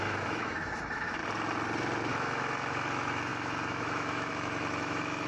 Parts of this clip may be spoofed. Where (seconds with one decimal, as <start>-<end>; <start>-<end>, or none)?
0.0-1.2; 2.1-5.3